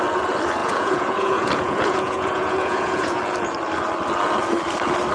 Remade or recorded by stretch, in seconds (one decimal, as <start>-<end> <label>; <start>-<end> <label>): 0.0-0.6 recorded; 0.6-3.2 remade; 3.2-5.1 recorded